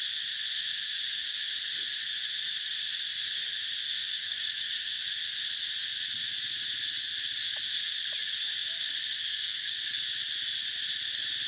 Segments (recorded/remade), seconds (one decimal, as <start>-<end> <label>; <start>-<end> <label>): 0.0-4.0 recorded; 4.0-5.0 remade; 5.0-9.3 recorded; 9.3-10.0 remade; 10.0-11.5 recorded